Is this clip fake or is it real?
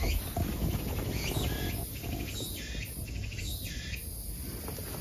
real